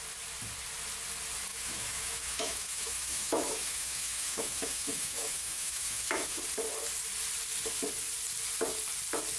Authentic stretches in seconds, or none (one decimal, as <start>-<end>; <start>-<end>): 0.0-1.5; 6.4-9.4